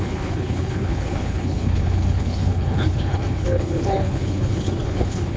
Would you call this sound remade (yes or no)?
yes